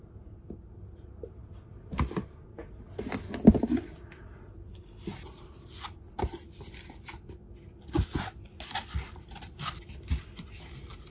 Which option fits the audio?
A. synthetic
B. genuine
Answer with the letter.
B